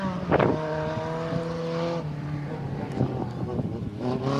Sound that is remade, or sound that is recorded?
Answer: recorded